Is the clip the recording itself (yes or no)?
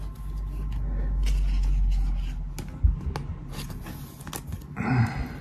yes